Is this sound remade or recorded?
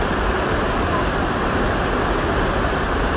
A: recorded